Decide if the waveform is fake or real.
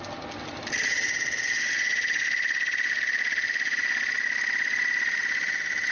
real